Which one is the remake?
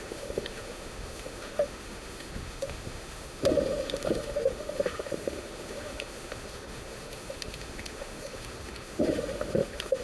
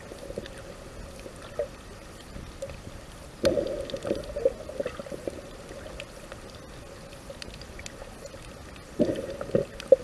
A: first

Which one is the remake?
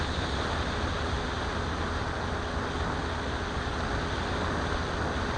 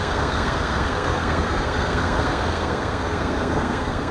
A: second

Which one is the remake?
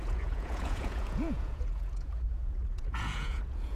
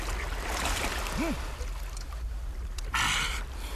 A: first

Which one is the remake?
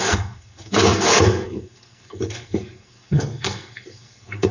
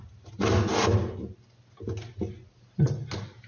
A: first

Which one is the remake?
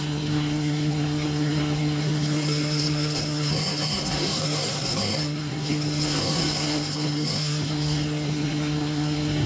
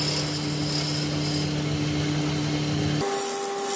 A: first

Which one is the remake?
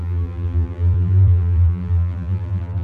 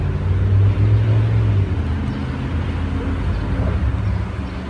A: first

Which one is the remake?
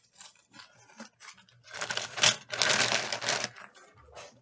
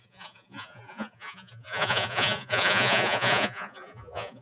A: second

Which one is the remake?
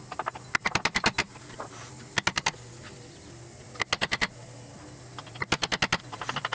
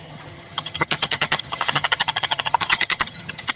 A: second